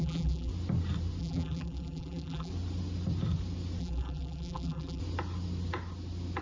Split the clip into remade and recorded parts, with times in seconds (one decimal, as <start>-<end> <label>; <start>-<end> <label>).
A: 0.0-0.5 remade; 0.5-1.2 recorded; 1.2-2.5 remade; 2.5-3.8 recorded; 3.8-5.0 remade; 5.0-6.4 recorded